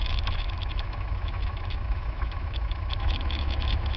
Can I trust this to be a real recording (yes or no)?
no